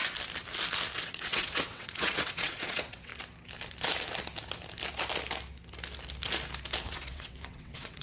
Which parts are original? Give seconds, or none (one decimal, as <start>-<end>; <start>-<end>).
0.0-1.0; 3.1-6.8